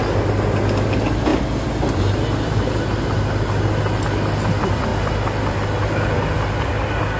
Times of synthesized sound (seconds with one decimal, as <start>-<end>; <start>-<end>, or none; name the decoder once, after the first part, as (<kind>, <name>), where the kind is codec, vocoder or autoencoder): none